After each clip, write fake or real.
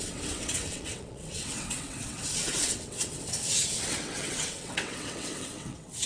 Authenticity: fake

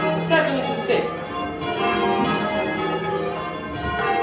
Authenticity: real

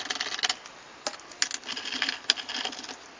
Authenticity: real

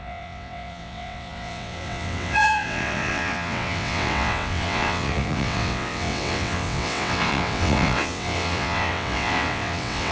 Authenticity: fake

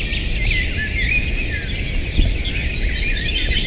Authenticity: real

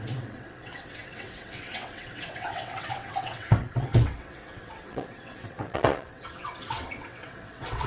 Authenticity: fake